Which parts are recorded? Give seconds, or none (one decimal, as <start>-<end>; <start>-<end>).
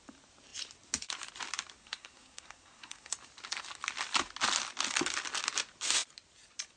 0.0-1.8; 3.1-6.8